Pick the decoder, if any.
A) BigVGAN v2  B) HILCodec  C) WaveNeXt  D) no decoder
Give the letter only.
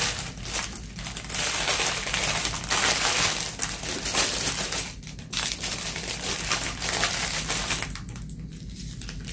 D